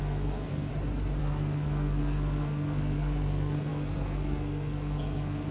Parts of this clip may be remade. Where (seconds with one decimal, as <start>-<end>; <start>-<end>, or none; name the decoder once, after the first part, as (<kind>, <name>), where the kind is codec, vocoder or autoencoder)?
0.0-0.7 (codec, SNAC); 1.2-5.5